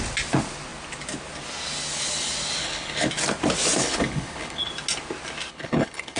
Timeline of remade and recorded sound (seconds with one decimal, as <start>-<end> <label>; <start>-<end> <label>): 0.0-2.6 recorded; 2.6-3.1 remade; 3.1-3.8 recorded; 3.8-4.7 remade; 4.7-5.5 recorded; 5.5-6.2 remade